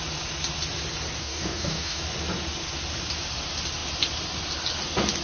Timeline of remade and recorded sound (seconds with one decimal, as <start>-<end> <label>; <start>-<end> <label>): 0.0-1.2 recorded; 1.2-2.0 remade; 2.0-5.2 recorded